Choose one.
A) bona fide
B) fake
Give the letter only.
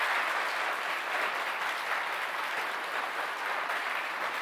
A